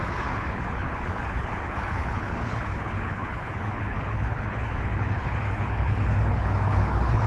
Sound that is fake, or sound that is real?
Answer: fake